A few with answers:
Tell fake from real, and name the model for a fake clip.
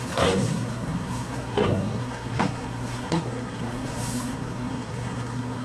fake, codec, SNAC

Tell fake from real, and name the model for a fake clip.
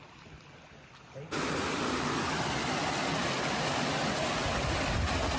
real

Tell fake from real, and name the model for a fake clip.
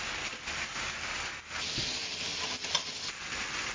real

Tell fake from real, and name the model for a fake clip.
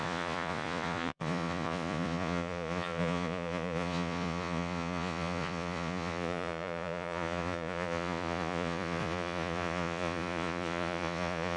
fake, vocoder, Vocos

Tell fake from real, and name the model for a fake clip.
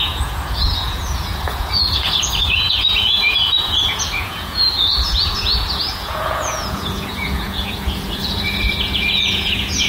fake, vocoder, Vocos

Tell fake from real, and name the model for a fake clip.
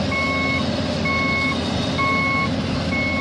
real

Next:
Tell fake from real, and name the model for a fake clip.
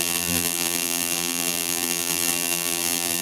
fake, vocoder, BigVGAN v2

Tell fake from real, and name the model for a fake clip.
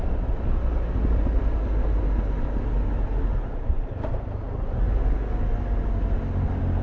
real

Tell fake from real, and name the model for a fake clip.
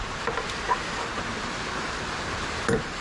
fake, vocoder, BigVGAN v2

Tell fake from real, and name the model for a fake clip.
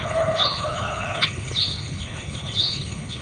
fake, codec, HILCodec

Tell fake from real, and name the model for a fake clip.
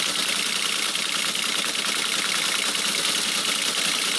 real